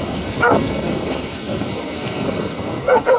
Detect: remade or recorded remade